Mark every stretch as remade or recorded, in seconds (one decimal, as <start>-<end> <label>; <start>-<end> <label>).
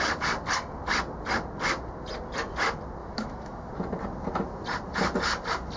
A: 0.0-3.0 recorded; 3.0-3.7 remade; 3.7-5.8 recorded